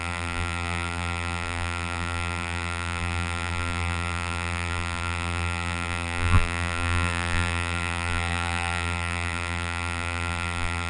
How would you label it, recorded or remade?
remade